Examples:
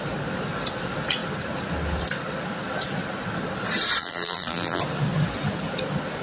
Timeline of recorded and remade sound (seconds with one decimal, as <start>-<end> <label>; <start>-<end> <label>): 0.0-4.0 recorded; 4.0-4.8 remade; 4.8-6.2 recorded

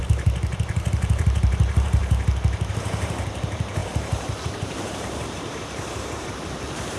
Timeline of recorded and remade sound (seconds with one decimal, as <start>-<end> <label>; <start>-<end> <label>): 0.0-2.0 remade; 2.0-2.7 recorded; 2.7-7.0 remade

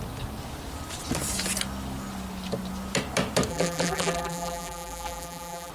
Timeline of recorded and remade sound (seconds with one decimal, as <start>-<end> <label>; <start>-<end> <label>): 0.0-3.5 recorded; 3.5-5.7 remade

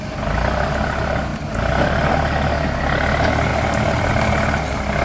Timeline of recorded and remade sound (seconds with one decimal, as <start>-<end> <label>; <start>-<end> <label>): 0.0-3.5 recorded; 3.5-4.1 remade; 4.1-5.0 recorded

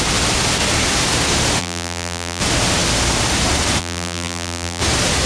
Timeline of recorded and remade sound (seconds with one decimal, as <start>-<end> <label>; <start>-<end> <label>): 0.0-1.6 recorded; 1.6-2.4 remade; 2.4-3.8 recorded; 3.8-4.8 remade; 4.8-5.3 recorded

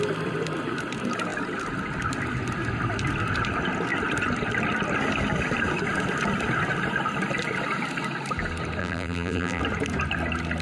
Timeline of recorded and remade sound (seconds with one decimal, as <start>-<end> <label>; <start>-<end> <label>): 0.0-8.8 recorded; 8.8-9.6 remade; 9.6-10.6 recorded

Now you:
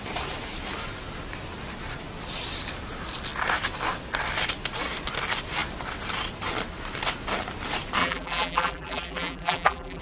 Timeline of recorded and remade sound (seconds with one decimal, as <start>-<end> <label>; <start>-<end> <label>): 0.0-8.0 recorded; 8.0-10.0 remade